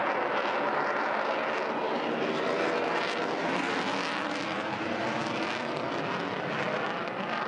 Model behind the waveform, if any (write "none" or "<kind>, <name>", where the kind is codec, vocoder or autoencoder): none